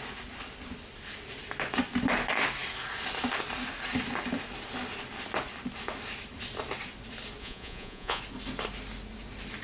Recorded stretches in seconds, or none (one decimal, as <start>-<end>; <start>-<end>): 0.0-7.4; 8.2-9.6